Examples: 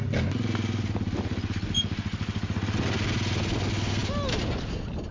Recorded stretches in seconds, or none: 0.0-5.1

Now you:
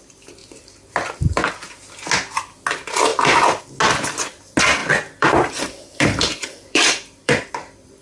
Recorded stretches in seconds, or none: 0.0-3.1; 3.6-4.8; 7.5-8.0

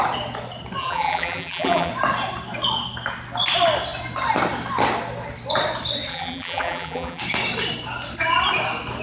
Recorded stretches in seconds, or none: 0.0-0.8; 1.9-6.1; 7.2-9.0

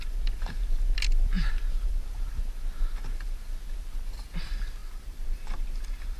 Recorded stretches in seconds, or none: 0.0-4.8